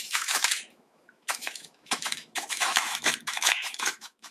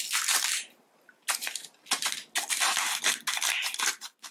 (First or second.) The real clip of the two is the second